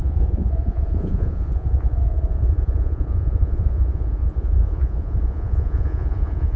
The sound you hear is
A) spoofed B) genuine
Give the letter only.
A